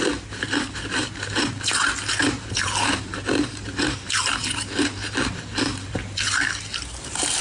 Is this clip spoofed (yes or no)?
yes